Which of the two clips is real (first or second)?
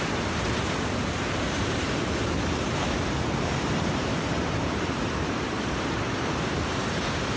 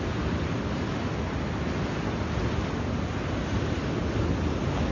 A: second